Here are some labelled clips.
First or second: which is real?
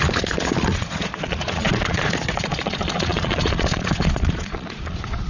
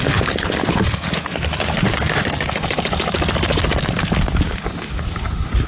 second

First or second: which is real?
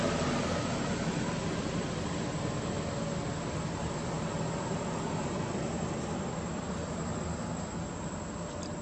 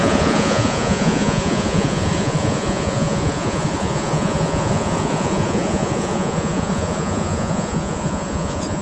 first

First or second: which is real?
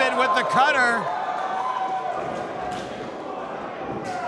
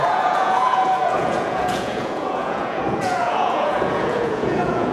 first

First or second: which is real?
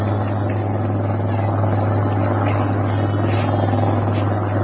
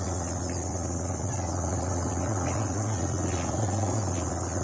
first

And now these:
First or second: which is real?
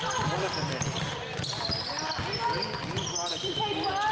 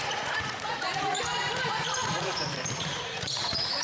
first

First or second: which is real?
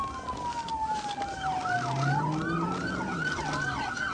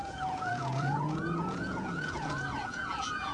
first